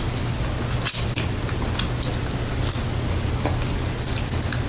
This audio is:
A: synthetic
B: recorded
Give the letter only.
B